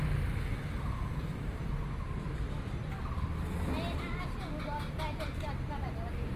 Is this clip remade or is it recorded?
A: recorded